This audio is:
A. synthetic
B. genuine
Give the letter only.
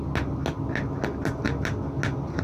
B